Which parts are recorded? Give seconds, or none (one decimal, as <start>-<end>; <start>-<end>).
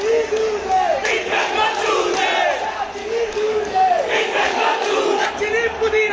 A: 0.0-1.2; 1.8-3.0